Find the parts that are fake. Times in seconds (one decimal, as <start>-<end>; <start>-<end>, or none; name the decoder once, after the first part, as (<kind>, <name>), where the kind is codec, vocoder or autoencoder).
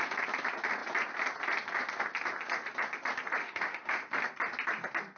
3.4-4.1 (autoencoder, DAC-VAE)